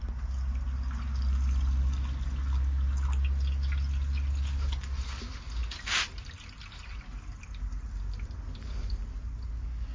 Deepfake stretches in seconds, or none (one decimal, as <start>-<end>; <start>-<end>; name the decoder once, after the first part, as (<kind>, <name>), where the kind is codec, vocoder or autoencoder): none